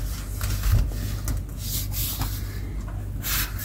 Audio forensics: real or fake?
real